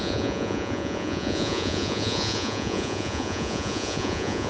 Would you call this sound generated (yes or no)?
yes